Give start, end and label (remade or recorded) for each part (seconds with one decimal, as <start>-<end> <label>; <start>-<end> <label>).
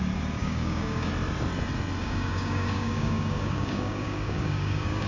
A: 0.0-0.4 recorded; 0.4-1.1 remade; 1.1-2.0 recorded; 2.0-5.1 remade